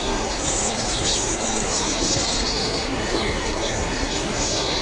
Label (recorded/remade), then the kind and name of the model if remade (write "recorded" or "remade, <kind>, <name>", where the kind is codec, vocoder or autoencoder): remade, codec, SNAC